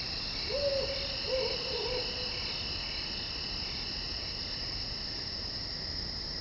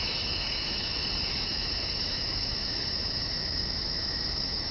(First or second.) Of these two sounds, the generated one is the second